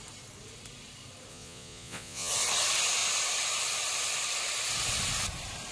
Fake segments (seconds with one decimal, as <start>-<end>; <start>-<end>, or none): 1.3-2.3